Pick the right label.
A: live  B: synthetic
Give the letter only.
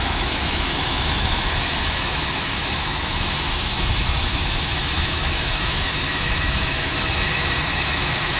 B